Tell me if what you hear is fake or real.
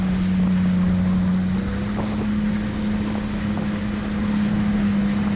real